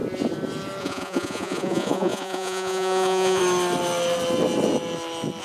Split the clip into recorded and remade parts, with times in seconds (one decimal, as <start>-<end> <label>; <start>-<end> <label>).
0.0-0.8 recorded; 0.8-3.4 remade; 3.4-5.4 recorded